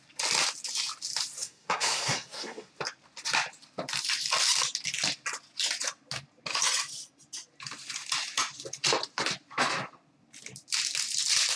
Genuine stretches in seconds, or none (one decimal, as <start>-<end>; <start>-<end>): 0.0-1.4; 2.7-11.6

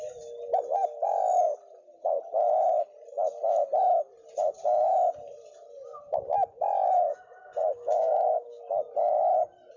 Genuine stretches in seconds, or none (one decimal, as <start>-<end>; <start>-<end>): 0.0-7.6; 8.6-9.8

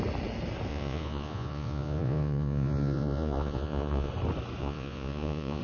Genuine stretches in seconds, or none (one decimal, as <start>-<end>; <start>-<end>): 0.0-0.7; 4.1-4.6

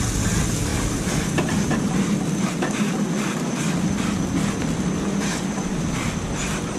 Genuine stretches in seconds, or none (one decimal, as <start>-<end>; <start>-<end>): 0.0-6.8

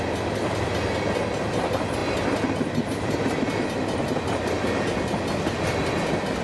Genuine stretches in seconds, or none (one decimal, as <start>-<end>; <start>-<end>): 0.0-6.4

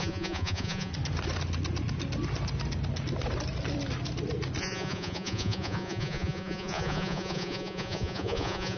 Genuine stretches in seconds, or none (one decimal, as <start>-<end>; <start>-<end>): 0.9-4.6

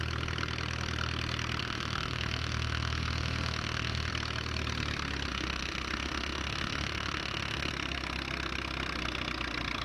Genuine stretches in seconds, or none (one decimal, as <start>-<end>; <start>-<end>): 0.0-1.6; 4.1-5.3; 7.7-9.8

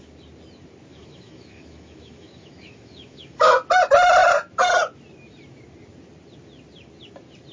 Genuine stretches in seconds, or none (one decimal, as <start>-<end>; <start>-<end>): 0.0-0.9; 3.5-7.5